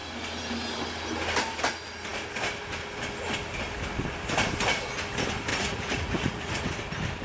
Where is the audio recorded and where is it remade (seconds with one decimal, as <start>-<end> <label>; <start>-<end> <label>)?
0.0-5.5 recorded; 5.5-6.7 remade; 6.7-7.2 recorded

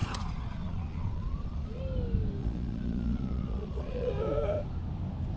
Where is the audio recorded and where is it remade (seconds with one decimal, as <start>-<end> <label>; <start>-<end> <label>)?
0.0-1.8 remade; 1.8-2.4 recorded; 2.4-4.1 remade; 4.1-5.4 recorded

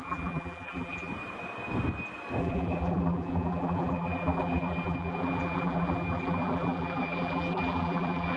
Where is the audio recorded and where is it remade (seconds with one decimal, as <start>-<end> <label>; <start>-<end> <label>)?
0.0-1.1 remade; 1.1-2.4 recorded; 2.4-8.4 remade